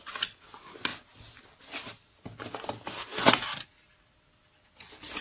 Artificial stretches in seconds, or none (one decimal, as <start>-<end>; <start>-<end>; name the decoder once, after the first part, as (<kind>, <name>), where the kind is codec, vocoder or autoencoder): none